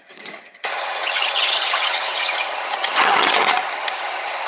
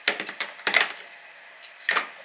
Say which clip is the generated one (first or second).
first